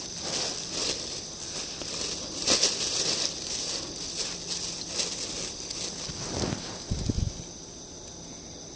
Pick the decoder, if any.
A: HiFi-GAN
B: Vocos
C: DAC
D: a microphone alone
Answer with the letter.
D